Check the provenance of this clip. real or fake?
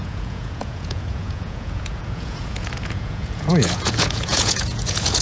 fake